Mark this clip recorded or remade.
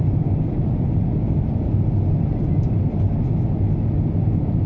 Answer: recorded